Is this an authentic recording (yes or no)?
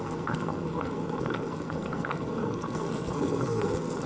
no